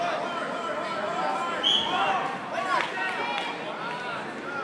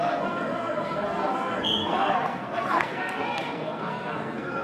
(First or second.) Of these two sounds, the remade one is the second